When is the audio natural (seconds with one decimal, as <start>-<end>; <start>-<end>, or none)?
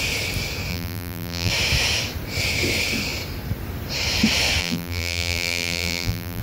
0.0-0.7; 1.5-4.6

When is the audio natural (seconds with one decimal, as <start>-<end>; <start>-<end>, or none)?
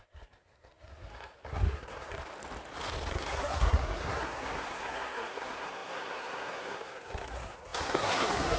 2.2-3.1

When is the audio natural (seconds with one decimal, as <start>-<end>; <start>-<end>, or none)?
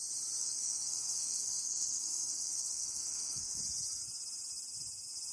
0.0-0.4; 3.6-5.3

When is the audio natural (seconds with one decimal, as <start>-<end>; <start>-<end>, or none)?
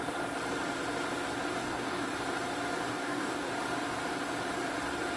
0.0-1.6; 2.1-2.9; 3.5-5.2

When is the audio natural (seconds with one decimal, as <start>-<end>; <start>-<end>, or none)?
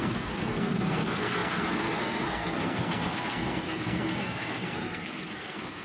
none